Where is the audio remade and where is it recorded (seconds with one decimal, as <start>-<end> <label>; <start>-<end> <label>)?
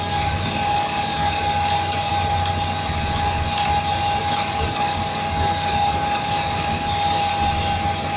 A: 0.0-2.1 remade; 2.1-4.2 recorded; 4.2-7.3 remade; 7.3-8.2 recorded